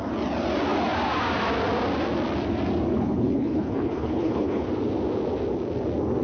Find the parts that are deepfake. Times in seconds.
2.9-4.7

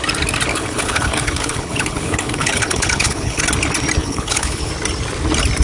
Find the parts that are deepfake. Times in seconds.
0.5-3.4; 4.0-4.7